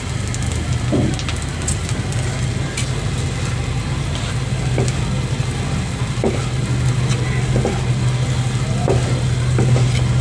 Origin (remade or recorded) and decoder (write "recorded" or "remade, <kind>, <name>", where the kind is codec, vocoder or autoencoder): recorded